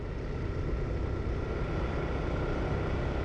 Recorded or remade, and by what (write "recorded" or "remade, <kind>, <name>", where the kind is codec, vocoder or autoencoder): recorded